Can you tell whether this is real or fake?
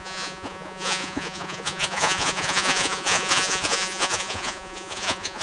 fake